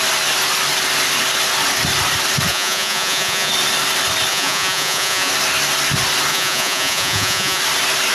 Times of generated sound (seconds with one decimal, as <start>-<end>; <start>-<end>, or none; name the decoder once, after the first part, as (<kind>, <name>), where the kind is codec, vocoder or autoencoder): 2.5-3.5 (vocoder, Vocos); 4.3-5.3; 6.3-7.6